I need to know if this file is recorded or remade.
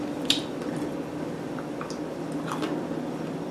recorded